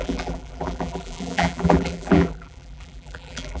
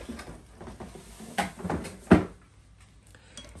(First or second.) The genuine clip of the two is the second